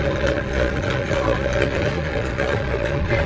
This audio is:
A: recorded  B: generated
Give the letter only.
B